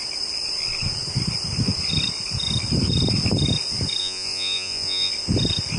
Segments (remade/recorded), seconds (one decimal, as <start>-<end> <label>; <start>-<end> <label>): 0.0-4.0 recorded; 4.0-5.1 remade; 5.1-5.8 recorded